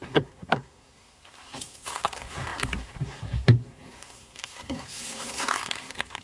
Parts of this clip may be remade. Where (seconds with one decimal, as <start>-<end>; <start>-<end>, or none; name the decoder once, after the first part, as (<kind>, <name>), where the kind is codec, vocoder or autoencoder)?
0.0-6.2 (codec, SNAC)